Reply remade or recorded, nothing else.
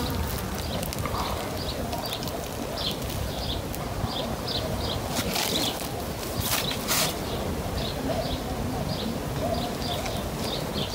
recorded